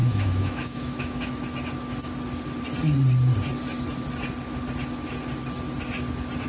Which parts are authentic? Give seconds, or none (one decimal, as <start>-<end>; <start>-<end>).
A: 1.3-6.5